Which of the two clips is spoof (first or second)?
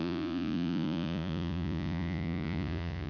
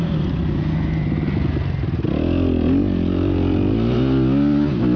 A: first